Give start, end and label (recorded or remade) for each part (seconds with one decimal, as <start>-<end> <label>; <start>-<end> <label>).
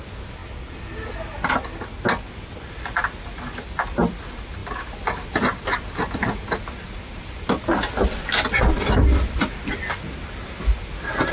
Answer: 0.0-11.3 recorded